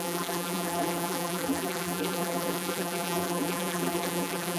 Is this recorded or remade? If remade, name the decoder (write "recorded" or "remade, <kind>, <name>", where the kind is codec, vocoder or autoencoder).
remade, vocoder, BigVGAN v2